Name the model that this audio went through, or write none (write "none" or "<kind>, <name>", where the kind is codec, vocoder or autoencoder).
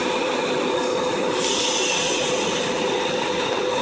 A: none